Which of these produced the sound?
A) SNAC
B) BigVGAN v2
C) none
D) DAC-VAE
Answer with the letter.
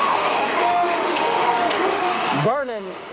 D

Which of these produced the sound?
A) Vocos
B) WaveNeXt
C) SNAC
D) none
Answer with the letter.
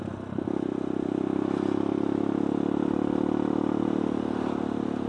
D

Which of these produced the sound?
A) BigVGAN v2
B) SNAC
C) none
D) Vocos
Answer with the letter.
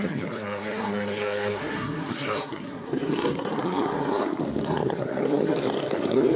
B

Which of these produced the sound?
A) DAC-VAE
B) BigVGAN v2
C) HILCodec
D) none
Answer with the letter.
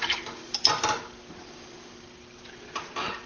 D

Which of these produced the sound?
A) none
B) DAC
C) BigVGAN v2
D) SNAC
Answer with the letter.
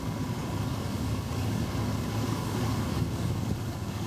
B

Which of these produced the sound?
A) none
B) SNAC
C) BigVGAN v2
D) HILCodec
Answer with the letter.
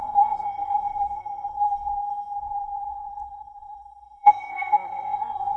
B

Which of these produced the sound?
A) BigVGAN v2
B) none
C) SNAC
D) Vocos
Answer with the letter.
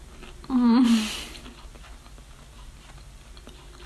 B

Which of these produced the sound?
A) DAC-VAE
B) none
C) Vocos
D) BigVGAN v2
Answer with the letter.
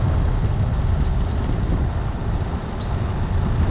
B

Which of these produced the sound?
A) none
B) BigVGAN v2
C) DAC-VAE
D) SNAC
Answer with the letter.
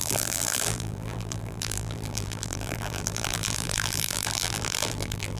B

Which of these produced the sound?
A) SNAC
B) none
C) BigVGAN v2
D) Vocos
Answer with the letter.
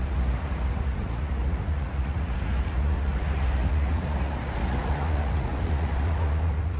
D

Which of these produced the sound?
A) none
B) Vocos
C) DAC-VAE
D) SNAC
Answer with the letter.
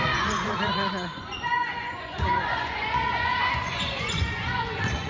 B